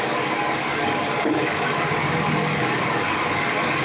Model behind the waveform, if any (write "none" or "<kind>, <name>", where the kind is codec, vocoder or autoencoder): codec, DAC